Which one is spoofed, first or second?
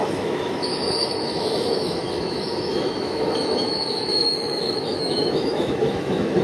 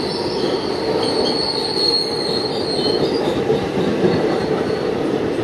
first